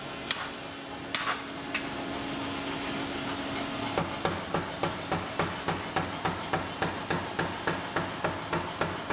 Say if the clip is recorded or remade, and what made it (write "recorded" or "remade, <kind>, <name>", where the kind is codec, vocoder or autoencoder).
recorded